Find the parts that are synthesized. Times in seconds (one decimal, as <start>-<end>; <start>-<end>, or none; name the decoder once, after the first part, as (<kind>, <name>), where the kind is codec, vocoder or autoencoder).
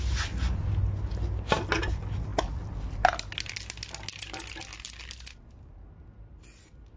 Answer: none